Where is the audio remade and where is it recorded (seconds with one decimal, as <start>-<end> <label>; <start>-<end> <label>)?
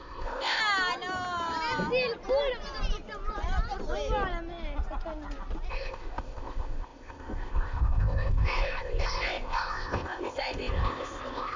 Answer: 0.0-0.6 remade; 0.6-5.7 recorded; 5.7-11.6 remade